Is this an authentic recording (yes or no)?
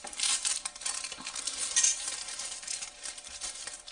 no